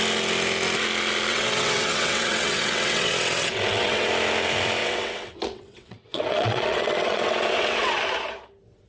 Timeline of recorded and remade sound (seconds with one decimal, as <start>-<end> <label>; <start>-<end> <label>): 0.0-1.3 recorded; 1.3-4.1 remade; 4.1-4.8 recorded; 4.8-8.0 remade; 8.0-8.9 recorded